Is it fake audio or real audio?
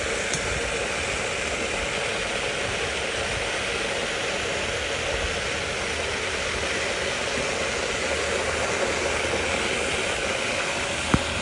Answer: real